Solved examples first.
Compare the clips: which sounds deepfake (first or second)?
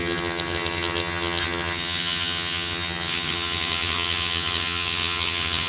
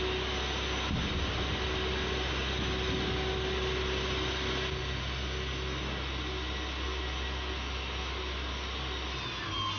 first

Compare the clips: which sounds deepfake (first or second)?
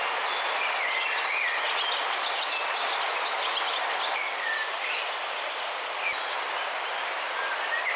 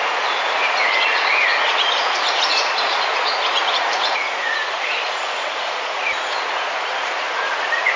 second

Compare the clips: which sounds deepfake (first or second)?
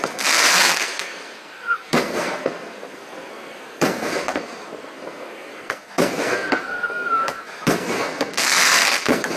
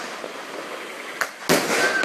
first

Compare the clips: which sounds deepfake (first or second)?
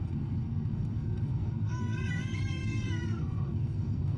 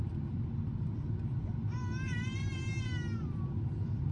first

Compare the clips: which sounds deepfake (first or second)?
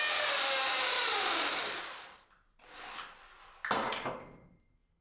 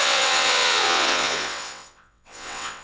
second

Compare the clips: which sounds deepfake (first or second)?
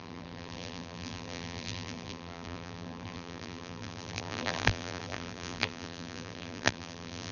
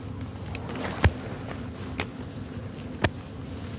first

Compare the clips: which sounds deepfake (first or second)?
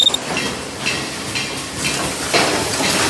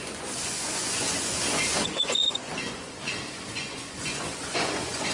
second